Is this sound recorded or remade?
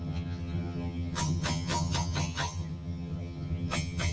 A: remade